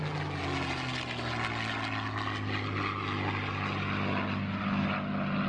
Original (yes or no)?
yes